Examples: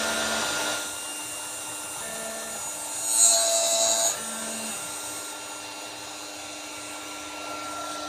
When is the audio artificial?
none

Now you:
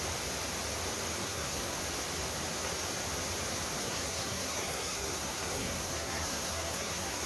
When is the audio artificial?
1.2-1.8 (codec, SNAC); 3.8-7.3

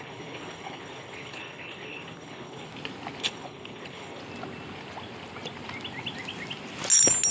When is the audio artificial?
0.0-2.7 (codec, HILCodec); 3.2-4.2

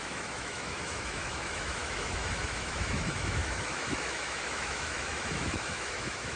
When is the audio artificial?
0.0-6.4 (autoencoder, DAC-VAE)

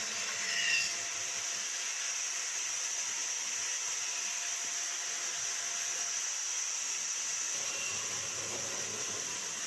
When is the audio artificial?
none

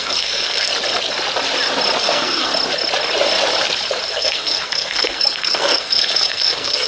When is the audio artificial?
0.0-0.7 (codec, SNAC); 2.0-2.5; 4.1-6.9

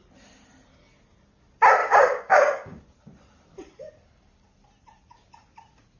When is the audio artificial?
1.8-2.8 (codec, DAC)